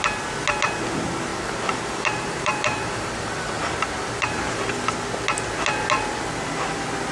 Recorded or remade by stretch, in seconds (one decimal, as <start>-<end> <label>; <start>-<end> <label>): 0.0-1.3 recorded; 1.3-4.6 remade; 4.6-7.1 recorded